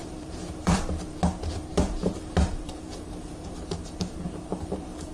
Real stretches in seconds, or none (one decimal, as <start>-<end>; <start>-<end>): 0.8-1.7